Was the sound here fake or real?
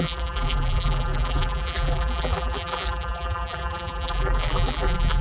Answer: fake